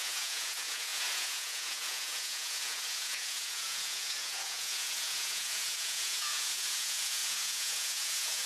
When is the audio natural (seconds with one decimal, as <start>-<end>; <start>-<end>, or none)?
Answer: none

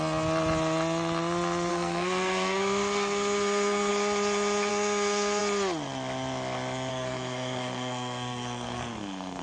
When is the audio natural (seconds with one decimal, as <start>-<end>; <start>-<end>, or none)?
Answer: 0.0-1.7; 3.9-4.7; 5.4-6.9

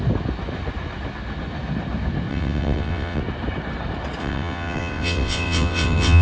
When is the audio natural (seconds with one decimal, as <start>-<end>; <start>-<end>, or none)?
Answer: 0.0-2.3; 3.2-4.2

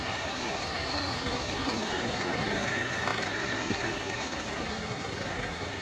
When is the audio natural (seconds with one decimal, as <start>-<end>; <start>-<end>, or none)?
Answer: none

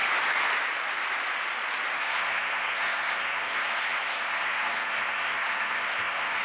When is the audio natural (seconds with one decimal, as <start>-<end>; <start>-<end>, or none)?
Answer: 0.0-2.0